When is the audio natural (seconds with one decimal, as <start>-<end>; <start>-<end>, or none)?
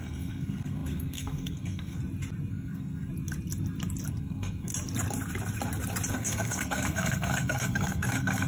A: 2.0-2.5; 3.1-4.1; 4.7-6.1